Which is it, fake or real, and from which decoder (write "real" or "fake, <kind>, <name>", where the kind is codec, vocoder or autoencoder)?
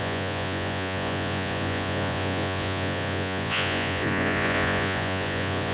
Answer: fake, vocoder, Vocos